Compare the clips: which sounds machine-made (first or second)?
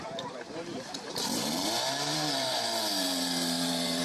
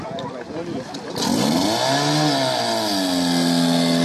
first